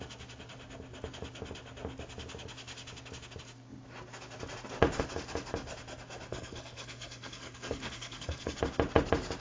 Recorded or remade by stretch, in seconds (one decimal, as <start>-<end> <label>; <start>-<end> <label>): 0.0-6.3 recorded; 6.3-8.6 remade; 8.6-9.4 recorded